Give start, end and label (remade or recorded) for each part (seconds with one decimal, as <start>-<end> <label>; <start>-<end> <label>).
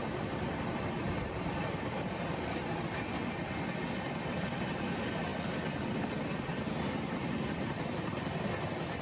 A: 0.0-5.3 remade; 5.3-6.1 recorded; 6.1-9.0 remade